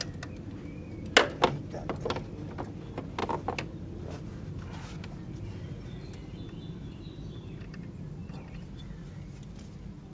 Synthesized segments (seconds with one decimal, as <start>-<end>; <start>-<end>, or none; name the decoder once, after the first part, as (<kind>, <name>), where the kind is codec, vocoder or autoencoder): none